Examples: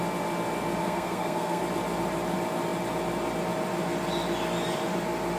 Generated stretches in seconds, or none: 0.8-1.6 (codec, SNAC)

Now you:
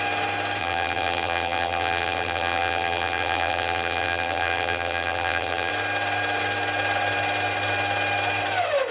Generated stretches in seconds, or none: 0.6-5.7 (vocoder, BigVGAN v2)

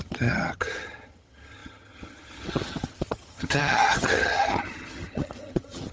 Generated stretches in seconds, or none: 0.0-5.9 (vocoder, HiFi-GAN)

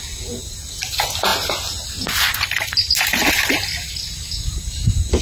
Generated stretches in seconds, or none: none

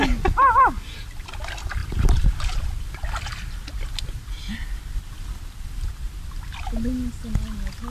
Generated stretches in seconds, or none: 1.8-2.6 (vocoder, BigVGAN v2); 5.9-6.5

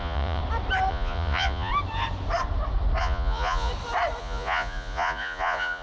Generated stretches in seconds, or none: 0.0-0.4 (vocoder, Vocos); 0.9-1.7; 3.0-3.7; 4.2-5.8

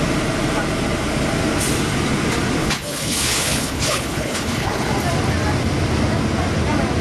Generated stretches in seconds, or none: 2.6-4.9 (codec, HILCodec)